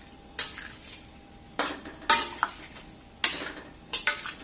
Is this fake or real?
real